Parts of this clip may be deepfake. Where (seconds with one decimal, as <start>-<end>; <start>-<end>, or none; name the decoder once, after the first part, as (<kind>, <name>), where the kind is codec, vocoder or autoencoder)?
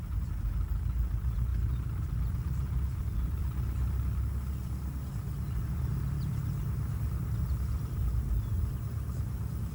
0.0-3.4 (vocoder, BigVGAN v2); 5.1-5.9; 8.9-9.7